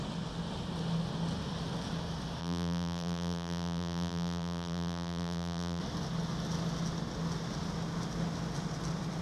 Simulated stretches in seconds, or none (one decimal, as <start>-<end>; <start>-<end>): 2.4-5.8